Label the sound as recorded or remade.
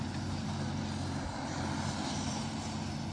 recorded